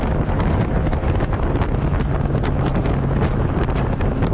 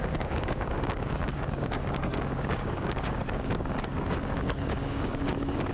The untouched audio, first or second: first